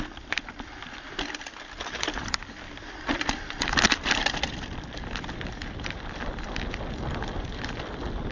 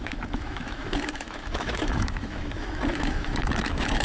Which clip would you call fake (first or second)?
second